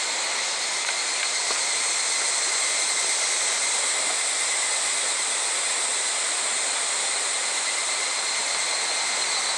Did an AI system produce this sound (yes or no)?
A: no